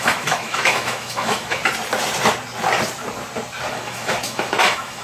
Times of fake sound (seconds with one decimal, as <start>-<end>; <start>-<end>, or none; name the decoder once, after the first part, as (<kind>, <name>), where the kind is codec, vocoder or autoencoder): 0.0-1.6 (autoencoder, DAC-VAE); 3.7-5.0